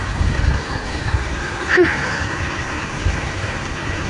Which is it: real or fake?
fake